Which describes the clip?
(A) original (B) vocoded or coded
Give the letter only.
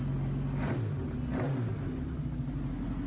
A